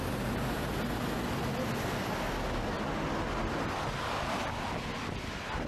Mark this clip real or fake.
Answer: real